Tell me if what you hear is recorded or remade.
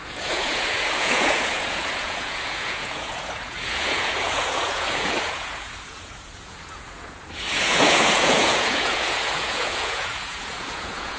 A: remade